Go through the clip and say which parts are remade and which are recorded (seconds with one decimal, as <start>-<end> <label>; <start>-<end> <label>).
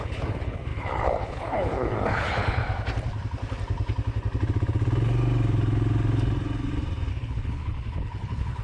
0.0-2.6 remade; 2.6-7.1 recorded; 7.1-8.6 remade